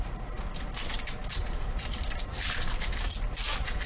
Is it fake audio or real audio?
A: real